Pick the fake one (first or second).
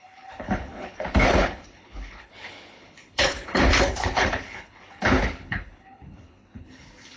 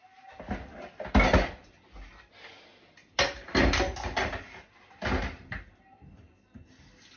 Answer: first